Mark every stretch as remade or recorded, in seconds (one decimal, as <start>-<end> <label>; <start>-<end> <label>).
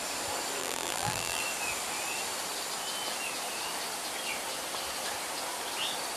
0.0-0.6 recorded; 0.6-1.4 remade; 1.4-6.2 recorded